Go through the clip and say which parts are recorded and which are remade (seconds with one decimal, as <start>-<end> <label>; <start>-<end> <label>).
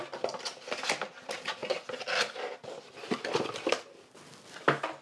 0.0-5.0 recorded